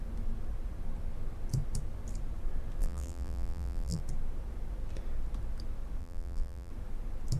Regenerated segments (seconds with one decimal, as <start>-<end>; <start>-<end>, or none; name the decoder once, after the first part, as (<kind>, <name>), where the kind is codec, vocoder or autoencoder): 2.8-4.0 (vocoder, BigVGAN v2); 6.0-6.7